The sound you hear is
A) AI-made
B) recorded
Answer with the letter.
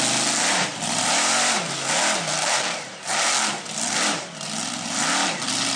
B